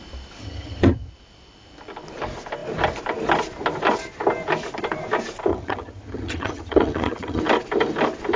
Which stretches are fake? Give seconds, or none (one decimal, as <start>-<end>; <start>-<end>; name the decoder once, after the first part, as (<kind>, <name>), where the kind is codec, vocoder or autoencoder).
0.4-1.1 (vocoder, HiFi-GAN); 5.5-7.4